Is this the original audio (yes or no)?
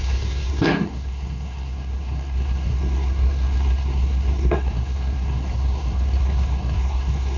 no